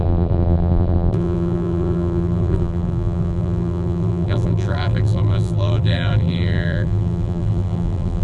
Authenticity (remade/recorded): remade